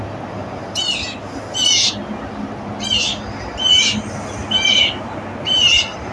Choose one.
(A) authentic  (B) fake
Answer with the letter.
A